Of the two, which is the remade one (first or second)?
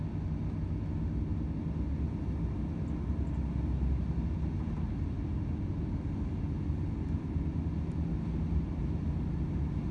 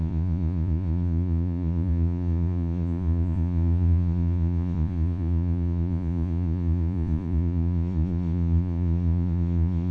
second